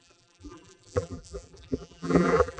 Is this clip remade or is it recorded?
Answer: remade